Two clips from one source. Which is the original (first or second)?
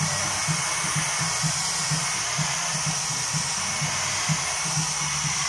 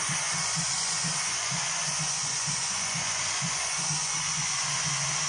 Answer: first